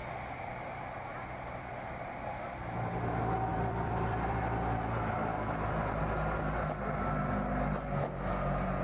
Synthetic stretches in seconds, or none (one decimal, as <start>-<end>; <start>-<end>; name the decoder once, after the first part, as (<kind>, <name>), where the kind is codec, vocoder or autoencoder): 0.0-2.1 (vocoder, BigVGAN v2); 3.5-4.4; 5.3-6.0